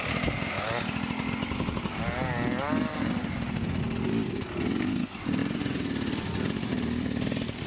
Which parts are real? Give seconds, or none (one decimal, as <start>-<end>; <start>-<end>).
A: 0.0-7.7